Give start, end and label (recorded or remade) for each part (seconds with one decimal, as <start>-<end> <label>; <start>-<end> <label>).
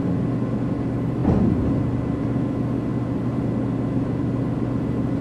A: 0.0-5.2 recorded